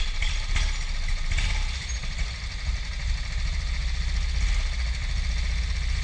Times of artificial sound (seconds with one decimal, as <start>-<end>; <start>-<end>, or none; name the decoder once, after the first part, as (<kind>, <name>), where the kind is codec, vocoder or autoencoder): none